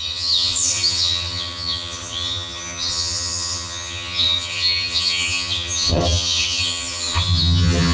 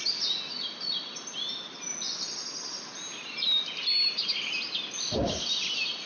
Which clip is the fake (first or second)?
first